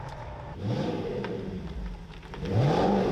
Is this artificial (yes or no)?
yes